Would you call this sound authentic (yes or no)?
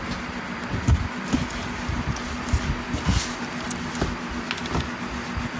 yes